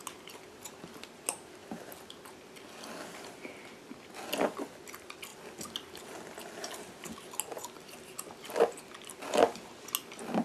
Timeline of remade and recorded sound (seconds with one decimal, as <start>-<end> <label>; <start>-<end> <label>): 0.0-10.4 recorded